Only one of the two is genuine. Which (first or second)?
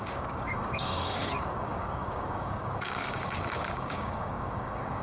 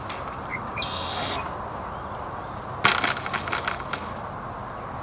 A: second